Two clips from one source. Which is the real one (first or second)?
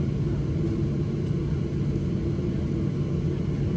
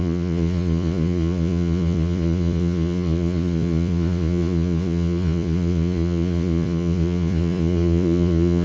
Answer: first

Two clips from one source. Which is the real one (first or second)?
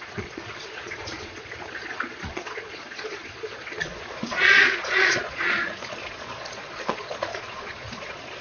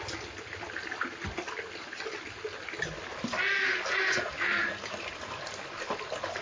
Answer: second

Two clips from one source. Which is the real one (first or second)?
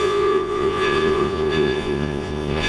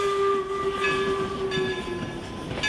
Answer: second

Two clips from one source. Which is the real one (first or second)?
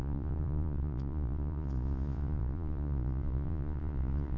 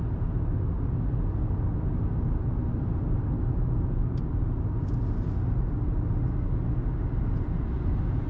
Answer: second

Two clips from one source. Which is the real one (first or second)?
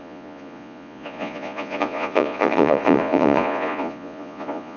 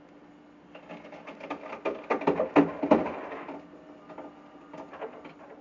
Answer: second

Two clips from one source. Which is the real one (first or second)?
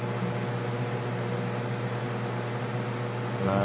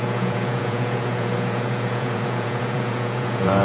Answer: first